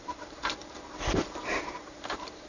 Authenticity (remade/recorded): remade